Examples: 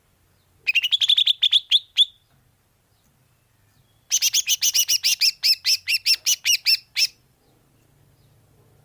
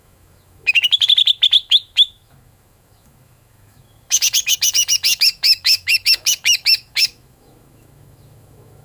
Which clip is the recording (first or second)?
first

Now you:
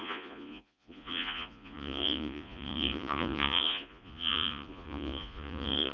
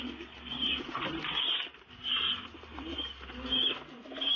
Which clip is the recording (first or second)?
second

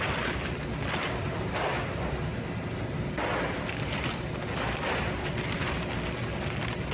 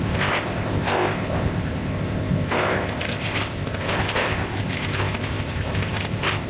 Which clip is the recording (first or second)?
first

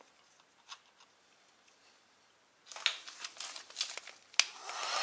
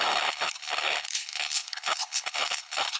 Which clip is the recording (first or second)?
first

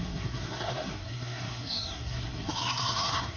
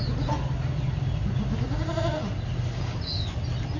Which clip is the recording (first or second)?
second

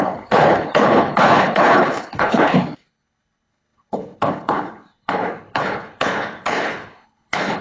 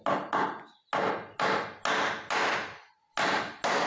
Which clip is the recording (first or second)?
second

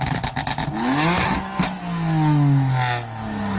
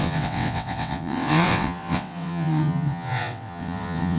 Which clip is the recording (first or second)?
first